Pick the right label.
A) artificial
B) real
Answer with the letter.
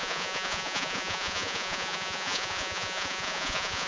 A